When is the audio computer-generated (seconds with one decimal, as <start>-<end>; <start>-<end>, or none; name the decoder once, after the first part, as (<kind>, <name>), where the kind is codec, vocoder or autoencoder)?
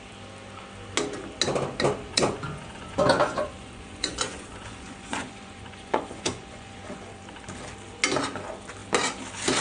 2.1-7.2 (vocoder, Vocos)